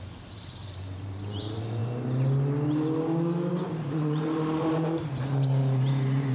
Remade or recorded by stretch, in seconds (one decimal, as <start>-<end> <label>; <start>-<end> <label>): 0.0-1.8 remade; 1.8-3.5 recorded; 3.5-6.3 remade